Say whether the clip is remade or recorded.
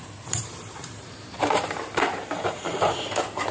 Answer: remade